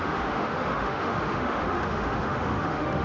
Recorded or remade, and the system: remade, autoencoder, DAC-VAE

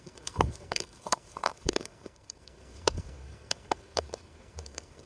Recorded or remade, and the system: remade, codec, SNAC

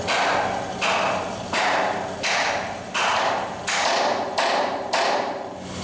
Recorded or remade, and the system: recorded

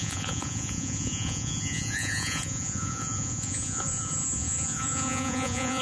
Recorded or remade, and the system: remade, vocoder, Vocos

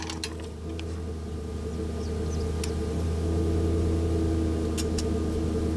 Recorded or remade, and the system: recorded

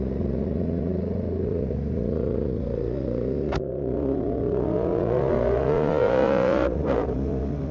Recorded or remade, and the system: remade, vocoder, Vocos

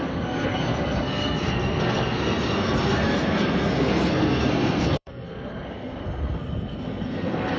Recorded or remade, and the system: remade, codec, SNAC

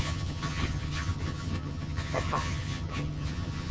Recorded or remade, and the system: remade, vocoder, HiFi-GAN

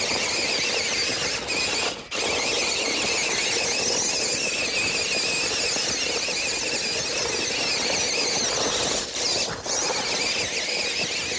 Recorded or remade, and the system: recorded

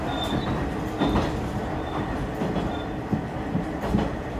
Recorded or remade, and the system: recorded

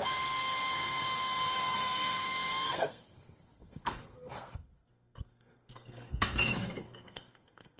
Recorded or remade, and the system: remade, codec, SNAC